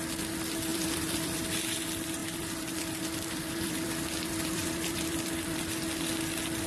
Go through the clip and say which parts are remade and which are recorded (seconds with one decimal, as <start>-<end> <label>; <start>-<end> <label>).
0.0-0.7 recorded; 0.7-1.4 remade; 1.4-2.2 recorded; 2.2-5.6 remade; 5.6-6.7 recorded